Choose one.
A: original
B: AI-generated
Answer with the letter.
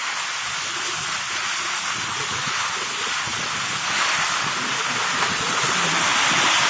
A